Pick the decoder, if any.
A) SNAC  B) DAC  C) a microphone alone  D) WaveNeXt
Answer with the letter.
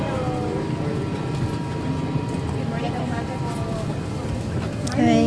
C